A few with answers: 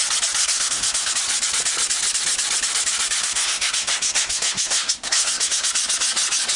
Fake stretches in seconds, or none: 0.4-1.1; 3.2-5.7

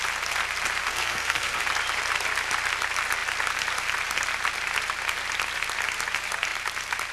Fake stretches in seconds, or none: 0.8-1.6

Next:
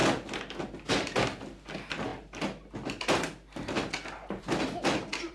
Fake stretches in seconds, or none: none